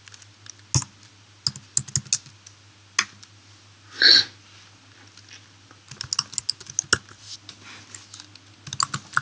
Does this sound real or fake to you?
real